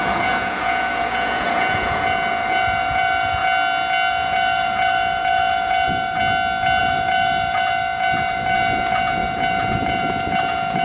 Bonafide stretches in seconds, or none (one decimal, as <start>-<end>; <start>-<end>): 3.4-4.1; 6.2-6.8